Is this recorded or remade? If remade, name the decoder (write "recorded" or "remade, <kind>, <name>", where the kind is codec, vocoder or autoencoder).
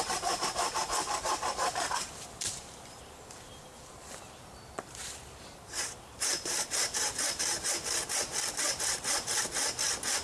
remade, vocoder, BigVGAN v2